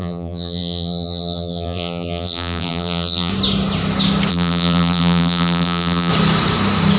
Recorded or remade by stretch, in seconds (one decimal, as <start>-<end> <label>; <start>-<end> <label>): 0.0-3.3 remade; 3.3-4.3 recorded; 4.3-6.1 remade; 6.1-7.0 recorded